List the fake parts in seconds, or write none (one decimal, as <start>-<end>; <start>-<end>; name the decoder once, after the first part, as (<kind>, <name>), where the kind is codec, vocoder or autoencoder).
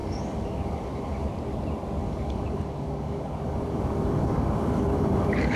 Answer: 0.0-1.3 (codec, DAC); 2.0-5.6